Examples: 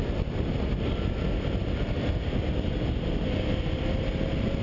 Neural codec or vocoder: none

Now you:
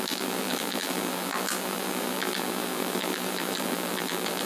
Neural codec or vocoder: vocoder, BigVGAN v2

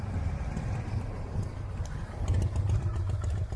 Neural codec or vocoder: vocoder, BigVGAN v2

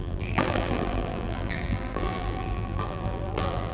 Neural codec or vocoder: vocoder, BigVGAN v2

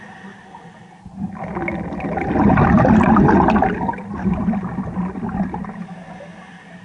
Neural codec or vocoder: none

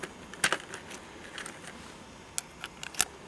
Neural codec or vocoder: none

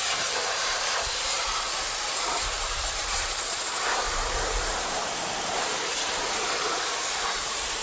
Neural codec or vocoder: vocoder, BigVGAN v2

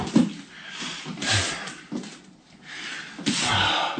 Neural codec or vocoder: none